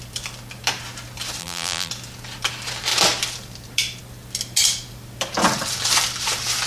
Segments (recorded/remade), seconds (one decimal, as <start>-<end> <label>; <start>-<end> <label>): 0.0-1.4 recorded; 1.4-1.9 remade; 1.9-6.7 recorded